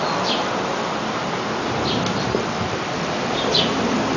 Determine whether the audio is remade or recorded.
recorded